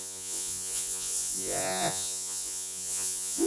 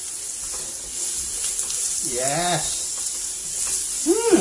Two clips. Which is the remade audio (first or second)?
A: first